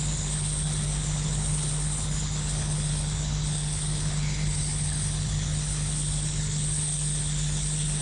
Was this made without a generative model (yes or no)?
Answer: no